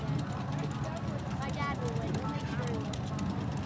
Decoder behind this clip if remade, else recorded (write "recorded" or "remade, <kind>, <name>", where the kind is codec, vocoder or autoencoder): recorded